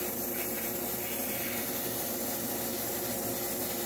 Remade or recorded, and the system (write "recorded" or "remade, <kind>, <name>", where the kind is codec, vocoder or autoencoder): recorded